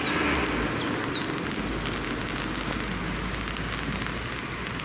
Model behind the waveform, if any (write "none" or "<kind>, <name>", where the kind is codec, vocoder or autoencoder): none